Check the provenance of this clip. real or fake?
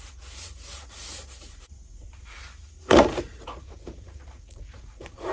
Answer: fake